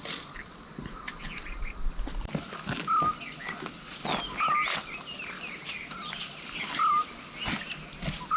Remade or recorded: recorded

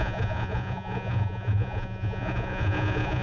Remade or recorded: remade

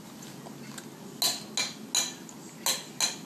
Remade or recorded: recorded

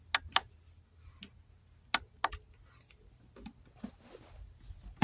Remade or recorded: recorded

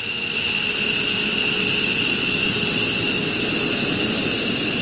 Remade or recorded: recorded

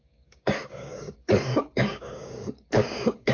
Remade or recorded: remade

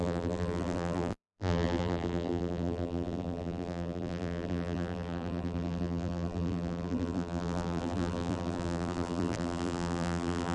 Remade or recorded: remade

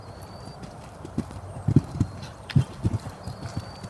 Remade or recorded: recorded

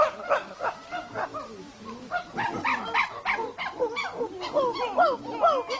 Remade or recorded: recorded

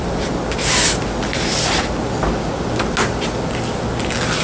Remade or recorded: recorded